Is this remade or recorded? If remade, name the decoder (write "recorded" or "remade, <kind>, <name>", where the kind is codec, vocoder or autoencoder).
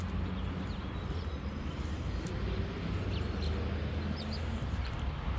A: recorded